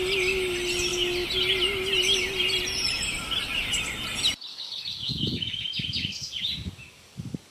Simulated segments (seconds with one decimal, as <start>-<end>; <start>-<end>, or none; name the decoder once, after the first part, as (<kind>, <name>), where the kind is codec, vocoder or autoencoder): 4.5-7.5 (codec, DAC)

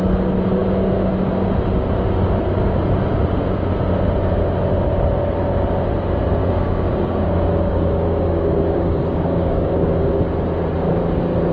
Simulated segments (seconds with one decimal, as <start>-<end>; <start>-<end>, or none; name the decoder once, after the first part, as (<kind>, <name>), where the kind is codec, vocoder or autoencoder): 6.4-10.1 (codec, DAC)

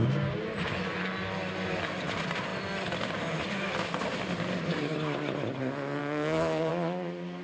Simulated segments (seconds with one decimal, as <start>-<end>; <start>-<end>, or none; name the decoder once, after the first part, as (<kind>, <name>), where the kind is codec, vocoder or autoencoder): 6.0-6.7 (codec, DAC)

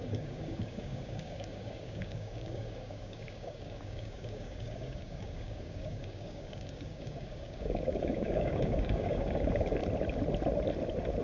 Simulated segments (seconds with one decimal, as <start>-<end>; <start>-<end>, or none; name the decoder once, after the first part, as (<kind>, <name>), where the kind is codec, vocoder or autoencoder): 0.0-9.8 (codec, DAC)

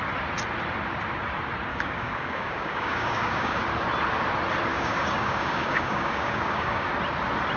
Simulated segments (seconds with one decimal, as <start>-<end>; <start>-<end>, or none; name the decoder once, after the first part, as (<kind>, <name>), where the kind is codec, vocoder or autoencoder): 1.7-3.6 (codec, DAC); 4.7-6.9

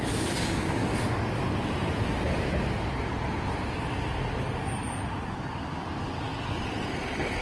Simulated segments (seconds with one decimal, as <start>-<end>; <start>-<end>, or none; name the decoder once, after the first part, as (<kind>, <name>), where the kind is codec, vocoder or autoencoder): 0.0-0.9 (codec, DAC); 5.3-6.3

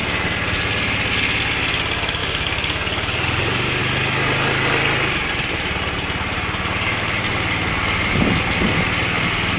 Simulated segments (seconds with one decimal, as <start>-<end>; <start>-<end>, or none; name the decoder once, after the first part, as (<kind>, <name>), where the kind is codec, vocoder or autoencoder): 2.2-3.8 (codec, DAC)